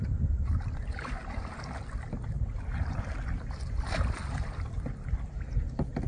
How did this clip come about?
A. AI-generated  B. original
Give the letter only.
B